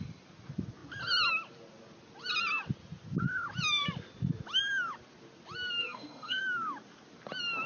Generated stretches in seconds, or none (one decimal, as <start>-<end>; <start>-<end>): 5.8-6.4